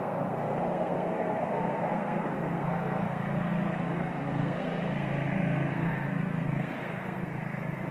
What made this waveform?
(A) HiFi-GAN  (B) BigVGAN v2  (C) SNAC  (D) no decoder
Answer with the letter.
C